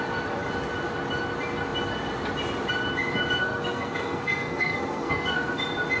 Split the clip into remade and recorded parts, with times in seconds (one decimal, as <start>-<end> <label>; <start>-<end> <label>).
0.0-3.4 recorded; 3.4-5.6 remade; 5.6-6.0 recorded